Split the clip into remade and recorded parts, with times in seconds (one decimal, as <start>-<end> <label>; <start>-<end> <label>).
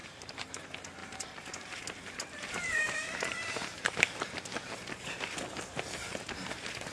0.0-0.6 remade; 0.6-1.0 recorded; 1.0-5.1 remade; 5.1-6.9 recorded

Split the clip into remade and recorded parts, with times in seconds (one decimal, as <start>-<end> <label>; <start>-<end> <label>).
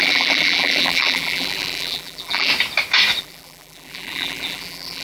0.0-2.5 remade; 2.5-3.2 recorded; 3.2-5.0 remade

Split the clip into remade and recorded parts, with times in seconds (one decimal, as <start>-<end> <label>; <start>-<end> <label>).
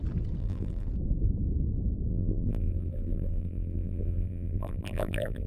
0.0-0.4 recorded; 0.4-0.9 remade; 0.9-2.1 recorded; 2.1-5.5 remade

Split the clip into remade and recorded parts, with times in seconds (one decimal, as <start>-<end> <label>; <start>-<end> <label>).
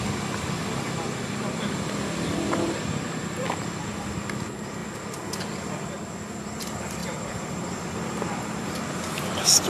0.0-7.0 recorded; 7.0-9.1 remade; 9.1-9.7 recorded